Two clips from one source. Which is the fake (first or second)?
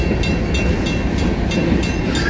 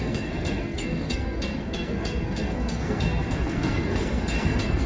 second